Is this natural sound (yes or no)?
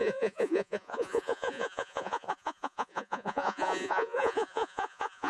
no